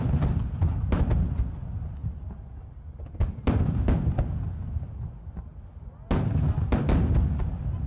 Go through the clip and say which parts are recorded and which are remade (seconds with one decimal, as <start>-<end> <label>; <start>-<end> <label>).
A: 0.0-7.9 recorded